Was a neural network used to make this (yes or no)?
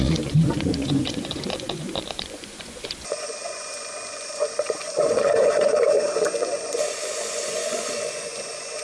yes